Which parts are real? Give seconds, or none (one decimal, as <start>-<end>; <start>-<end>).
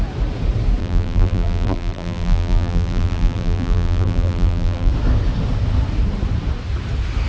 0.0-0.8; 4.9-7.3